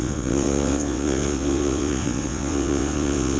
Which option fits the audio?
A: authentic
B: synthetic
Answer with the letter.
B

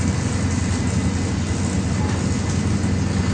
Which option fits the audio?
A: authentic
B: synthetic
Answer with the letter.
A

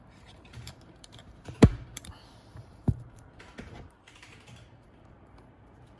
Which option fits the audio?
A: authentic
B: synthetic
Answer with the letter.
B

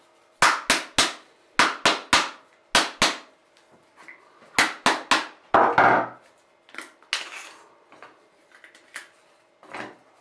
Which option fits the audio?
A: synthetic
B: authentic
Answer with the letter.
B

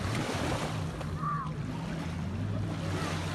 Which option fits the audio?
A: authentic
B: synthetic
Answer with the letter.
A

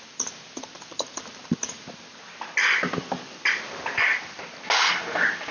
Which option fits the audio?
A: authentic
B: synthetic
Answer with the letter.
A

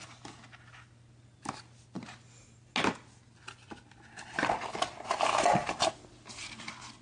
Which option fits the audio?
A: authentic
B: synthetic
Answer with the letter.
A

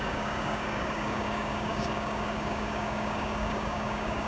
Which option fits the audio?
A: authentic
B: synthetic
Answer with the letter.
B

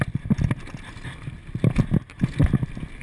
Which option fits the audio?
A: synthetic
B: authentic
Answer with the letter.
B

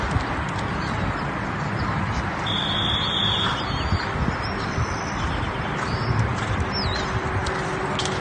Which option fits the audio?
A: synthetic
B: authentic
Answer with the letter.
B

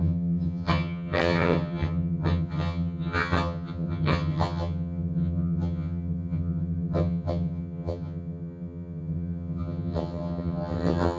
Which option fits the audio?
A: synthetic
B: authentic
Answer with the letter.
A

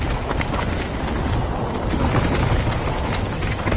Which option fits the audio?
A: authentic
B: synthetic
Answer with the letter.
A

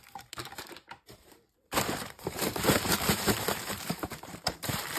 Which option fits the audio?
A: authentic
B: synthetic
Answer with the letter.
B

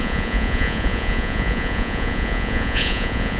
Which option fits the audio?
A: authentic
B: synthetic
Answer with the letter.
B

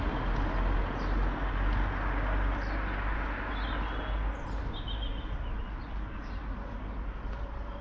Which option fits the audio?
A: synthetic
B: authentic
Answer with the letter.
B